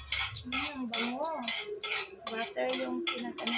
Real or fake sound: real